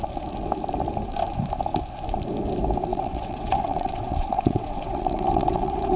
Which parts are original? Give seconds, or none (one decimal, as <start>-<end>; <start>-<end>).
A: 0.0-2.9